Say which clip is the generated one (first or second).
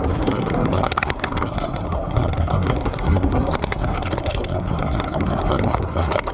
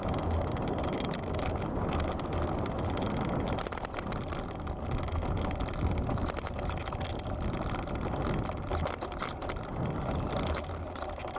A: first